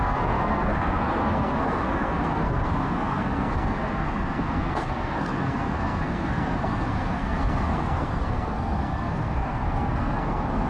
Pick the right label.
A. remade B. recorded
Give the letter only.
A